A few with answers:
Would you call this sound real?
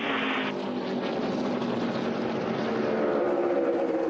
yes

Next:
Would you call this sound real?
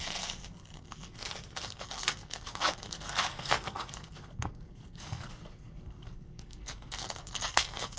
no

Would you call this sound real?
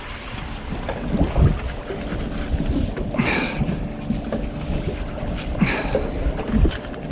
yes